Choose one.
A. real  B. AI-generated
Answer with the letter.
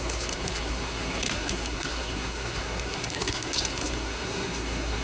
B